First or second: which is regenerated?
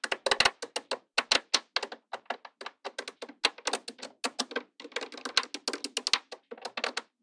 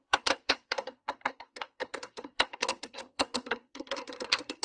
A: second